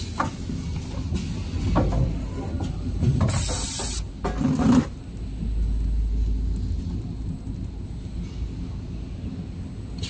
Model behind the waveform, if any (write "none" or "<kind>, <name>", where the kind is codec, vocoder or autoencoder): none